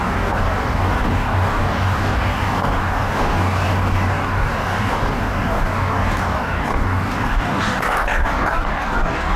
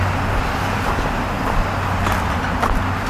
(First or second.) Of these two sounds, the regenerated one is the first